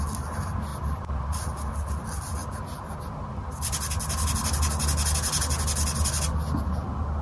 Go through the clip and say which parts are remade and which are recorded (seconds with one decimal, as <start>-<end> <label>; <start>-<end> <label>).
0.0-0.7 recorded; 0.7-1.7 remade; 1.7-7.2 recorded